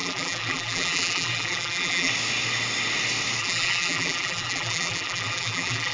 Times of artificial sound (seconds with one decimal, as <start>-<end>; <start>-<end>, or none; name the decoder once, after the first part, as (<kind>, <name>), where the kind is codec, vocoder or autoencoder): 0.0-2.1 (vocoder, BigVGAN v2); 3.4-5.9

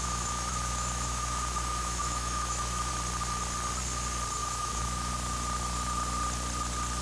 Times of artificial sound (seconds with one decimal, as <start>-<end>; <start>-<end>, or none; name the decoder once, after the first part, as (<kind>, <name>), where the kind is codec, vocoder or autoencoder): 0.0-2.9 (autoencoder, DAC-VAE); 4.4-5.1

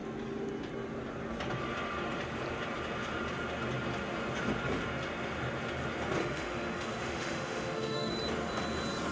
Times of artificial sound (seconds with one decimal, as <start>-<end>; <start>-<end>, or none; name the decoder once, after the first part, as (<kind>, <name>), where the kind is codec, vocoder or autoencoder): 6.2-8.1 (autoencoder, DAC-VAE)

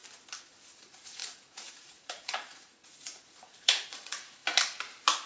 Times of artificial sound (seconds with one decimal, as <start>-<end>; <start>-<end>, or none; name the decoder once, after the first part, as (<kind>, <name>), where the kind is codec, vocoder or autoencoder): 0.7-4.4 (vocoder, Vocos)